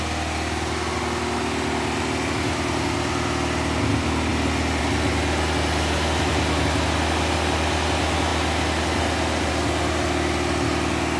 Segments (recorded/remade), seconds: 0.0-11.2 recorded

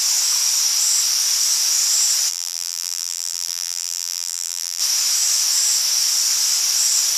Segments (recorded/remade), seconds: 0.0-2.3 recorded; 2.3-4.8 remade; 4.8-7.2 recorded